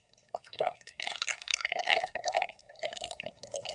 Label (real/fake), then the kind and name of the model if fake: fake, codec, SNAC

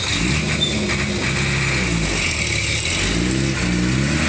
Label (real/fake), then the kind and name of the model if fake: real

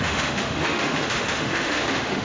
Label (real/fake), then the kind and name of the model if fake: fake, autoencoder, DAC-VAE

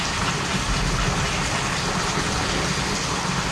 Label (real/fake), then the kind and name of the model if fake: real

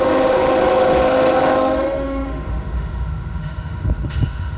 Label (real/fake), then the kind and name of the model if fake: fake, autoencoder, DAC-VAE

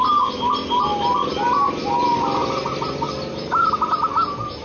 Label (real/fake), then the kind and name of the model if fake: real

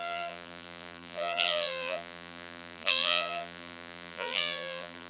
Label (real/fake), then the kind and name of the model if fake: fake, vocoder, BigVGAN v2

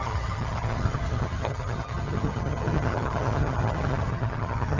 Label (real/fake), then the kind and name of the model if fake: fake, vocoder, HiFi-GAN